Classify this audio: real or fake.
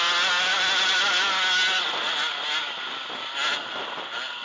real